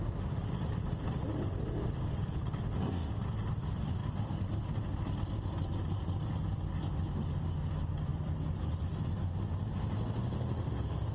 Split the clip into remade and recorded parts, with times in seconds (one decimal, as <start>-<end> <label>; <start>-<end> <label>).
0.0-11.1 recorded